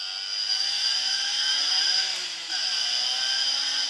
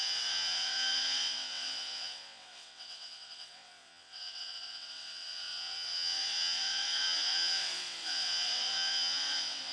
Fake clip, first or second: second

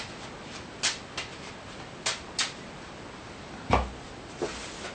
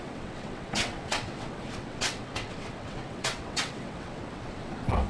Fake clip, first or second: second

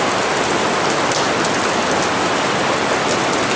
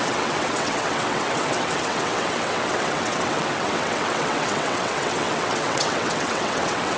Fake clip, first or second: second